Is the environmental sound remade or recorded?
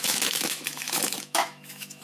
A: remade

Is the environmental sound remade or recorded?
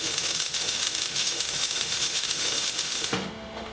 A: remade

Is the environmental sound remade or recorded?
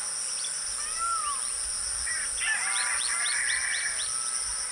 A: recorded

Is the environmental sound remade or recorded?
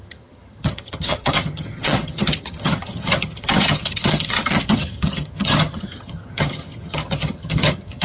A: remade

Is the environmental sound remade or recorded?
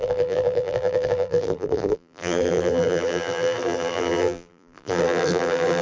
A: remade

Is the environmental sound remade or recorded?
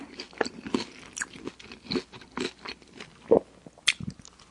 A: recorded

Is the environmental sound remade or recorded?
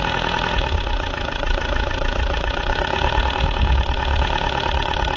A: remade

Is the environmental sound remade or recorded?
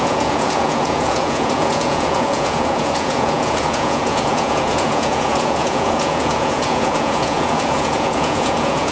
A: remade